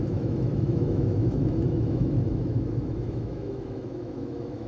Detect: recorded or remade remade